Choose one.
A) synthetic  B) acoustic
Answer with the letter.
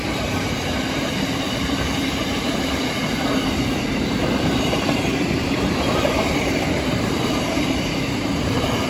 A